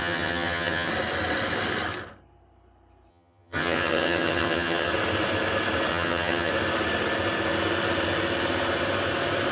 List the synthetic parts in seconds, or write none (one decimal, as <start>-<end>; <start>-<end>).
0.0-0.9; 3.1-4.9; 5.9-6.5